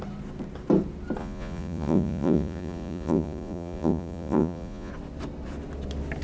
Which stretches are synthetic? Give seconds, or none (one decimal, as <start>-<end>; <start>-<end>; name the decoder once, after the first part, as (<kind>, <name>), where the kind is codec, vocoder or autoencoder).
1.2-4.9 (vocoder, Vocos)